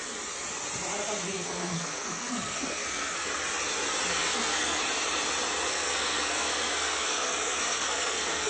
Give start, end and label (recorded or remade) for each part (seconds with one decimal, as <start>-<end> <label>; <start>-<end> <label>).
0.0-1.3 recorded; 1.3-3.3 remade; 3.3-4.1 recorded; 4.1-4.8 remade; 4.8-5.7 recorded; 5.7-8.5 remade